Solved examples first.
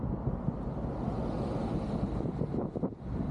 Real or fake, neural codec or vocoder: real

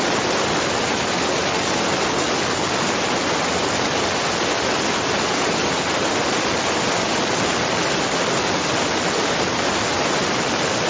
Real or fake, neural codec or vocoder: real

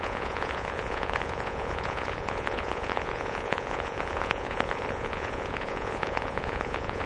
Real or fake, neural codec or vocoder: fake, vocoder, Vocos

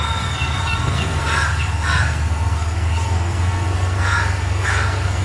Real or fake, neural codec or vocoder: fake, codec, SNAC